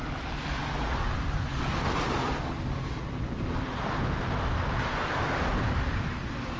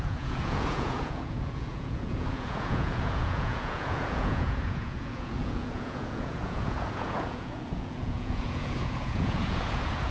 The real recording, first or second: first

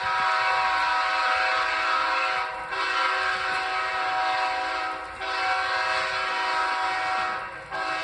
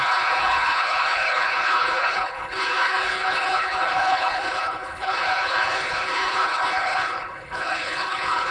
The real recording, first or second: first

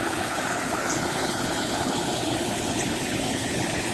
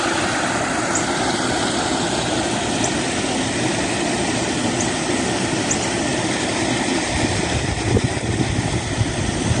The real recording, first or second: second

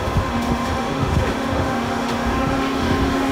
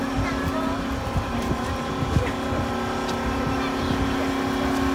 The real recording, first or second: second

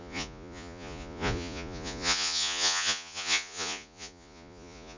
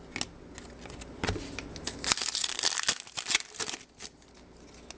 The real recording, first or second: second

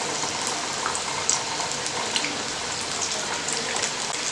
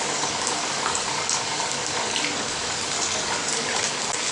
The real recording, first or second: first